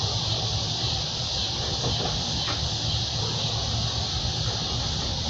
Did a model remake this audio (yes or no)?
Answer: no